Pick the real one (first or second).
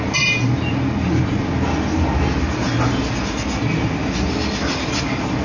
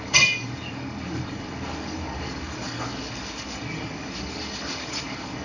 first